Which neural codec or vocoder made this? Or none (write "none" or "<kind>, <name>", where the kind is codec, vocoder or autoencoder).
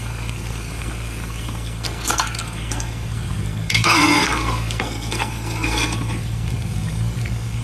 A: codec, SNAC